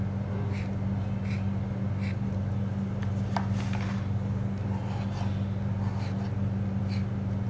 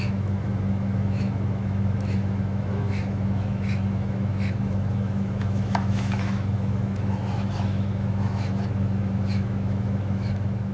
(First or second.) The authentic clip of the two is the first